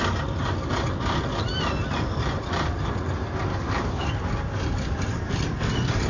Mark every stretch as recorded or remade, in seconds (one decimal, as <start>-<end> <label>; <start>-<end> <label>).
0.0-3.5 recorded; 3.5-4.1 remade; 4.1-6.1 recorded